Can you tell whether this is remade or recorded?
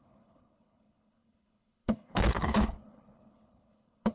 remade